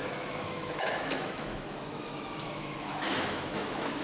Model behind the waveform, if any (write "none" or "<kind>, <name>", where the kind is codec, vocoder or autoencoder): autoencoder, DAC-VAE